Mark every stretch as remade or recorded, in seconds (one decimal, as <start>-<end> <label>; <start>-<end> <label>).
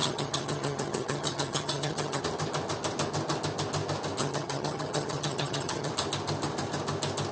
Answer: 0.0-2.2 remade; 2.2-4.2 recorded; 4.2-5.9 remade; 5.9-7.3 recorded